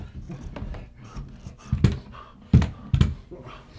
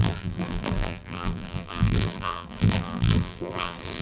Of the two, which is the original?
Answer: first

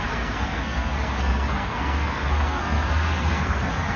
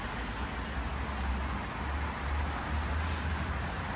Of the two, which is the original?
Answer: second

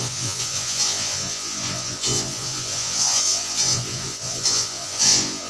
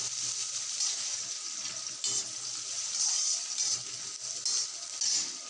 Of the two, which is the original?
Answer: second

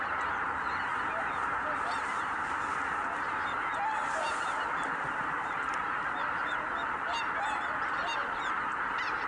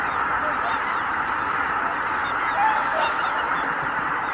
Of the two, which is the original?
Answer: first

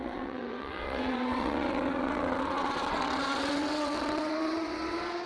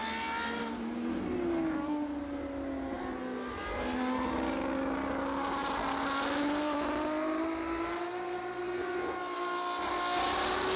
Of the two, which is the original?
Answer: second